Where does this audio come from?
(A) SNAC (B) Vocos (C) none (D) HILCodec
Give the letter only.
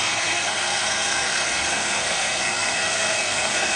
A